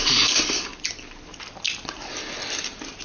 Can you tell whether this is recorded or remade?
recorded